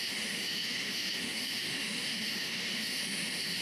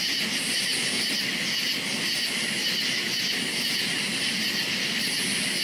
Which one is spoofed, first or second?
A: first